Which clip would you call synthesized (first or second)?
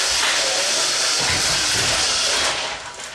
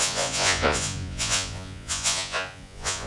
second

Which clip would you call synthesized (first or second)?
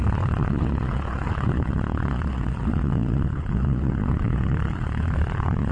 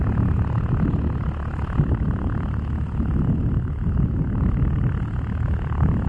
first